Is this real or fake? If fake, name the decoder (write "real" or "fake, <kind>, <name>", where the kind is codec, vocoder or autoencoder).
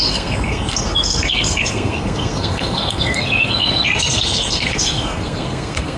fake, codec, SNAC